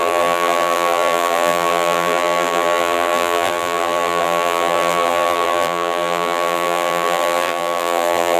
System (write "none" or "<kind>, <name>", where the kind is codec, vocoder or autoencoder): vocoder, BigVGAN v2